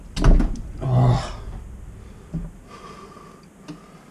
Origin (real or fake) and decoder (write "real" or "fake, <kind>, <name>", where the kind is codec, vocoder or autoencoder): real